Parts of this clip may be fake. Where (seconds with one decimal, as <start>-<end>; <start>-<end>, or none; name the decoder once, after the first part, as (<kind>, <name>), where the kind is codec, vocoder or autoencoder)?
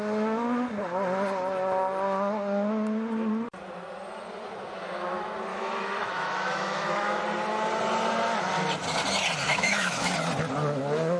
5.5-7.2 (autoencoder, DAC-VAE); 9.5-10.1